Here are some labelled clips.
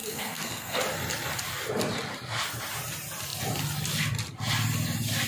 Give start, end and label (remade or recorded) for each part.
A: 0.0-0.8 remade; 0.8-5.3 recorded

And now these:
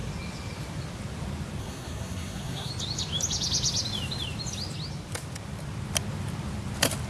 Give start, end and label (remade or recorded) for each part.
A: 0.0-1.6 recorded; 1.6-2.7 remade; 2.7-7.1 recorded